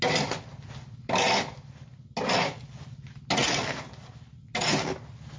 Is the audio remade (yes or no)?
no